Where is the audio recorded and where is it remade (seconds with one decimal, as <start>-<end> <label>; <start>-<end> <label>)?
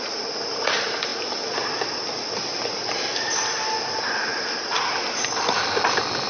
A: 0.0-6.3 recorded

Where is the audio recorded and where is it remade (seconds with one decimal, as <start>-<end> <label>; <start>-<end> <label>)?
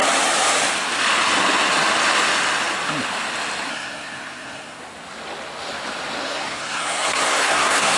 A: 0.0-3.7 recorded; 3.7-4.8 remade; 4.8-6.2 recorded; 6.2-8.0 remade